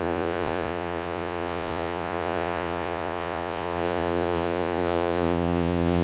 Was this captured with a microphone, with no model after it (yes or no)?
no